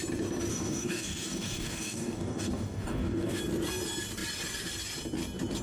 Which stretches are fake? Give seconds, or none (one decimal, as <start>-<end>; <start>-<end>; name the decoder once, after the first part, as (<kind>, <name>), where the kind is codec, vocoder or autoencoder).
0.5-3.4 (codec, DAC)